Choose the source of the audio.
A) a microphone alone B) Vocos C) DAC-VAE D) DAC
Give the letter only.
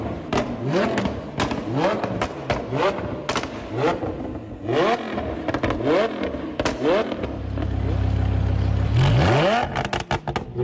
A